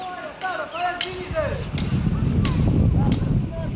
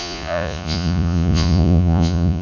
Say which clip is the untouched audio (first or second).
first